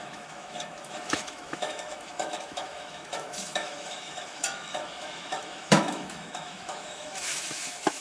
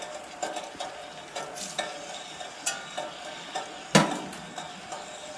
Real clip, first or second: second